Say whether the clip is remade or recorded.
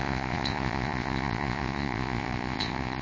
remade